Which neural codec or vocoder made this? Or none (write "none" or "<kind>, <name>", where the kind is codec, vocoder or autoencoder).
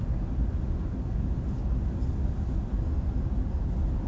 none